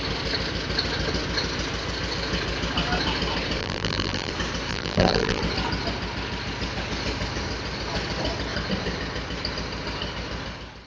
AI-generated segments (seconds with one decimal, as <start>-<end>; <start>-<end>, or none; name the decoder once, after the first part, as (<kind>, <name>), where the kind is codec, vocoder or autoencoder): 3.6-4.3 (vocoder, BigVGAN v2); 4.7-5.4